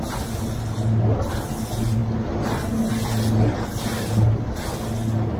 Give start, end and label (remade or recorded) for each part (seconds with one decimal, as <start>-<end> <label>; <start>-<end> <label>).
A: 0.0-5.4 recorded